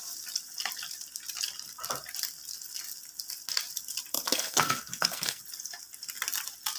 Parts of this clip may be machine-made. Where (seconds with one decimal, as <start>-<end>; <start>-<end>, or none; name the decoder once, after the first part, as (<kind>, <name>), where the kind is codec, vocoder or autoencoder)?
4.1-5.4 (codec, SNAC)